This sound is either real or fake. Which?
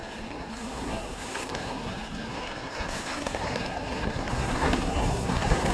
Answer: fake